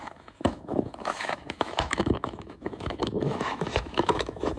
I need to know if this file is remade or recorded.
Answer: remade